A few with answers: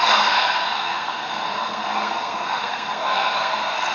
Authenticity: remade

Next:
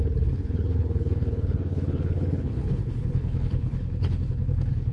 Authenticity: remade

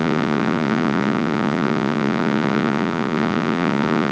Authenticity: remade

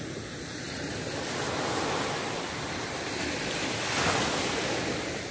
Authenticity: recorded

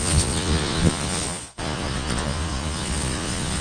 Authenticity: remade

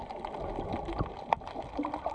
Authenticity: recorded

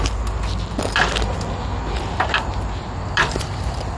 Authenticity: recorded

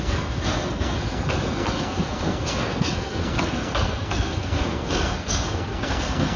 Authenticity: remade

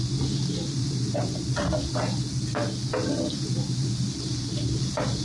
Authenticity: recorded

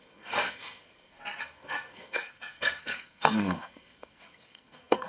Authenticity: remade